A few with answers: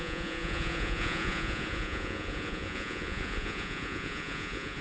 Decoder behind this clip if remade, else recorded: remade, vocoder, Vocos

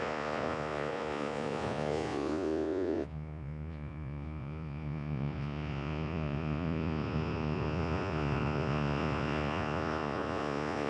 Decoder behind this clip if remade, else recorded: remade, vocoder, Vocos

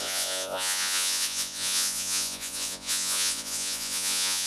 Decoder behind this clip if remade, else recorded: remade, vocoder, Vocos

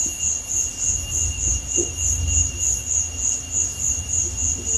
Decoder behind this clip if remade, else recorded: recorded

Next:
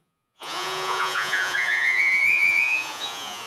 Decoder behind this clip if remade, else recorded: remade, vocoder, Vocos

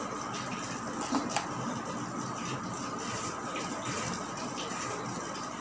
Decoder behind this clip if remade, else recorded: recorded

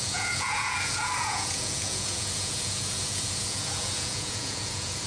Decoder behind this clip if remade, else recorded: remade, vocoder, Vocos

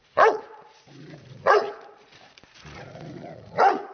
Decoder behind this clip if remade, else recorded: remade, vocoder, Vocos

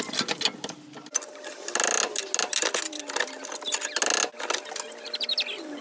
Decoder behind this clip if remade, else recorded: recorded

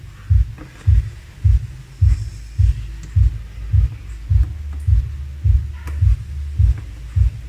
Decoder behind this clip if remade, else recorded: recorded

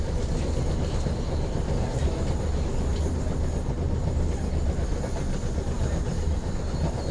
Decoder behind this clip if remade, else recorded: recorded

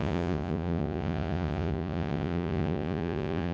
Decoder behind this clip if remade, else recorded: remade, vocoder, Vocos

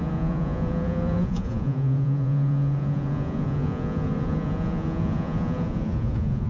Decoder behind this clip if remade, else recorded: remade, vocoder, Vocos